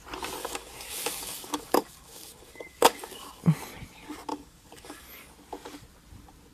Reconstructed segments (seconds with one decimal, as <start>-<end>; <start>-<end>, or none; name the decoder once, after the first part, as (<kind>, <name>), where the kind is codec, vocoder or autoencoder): 0.4-3.4 (codec, DAC); 4.3-5.3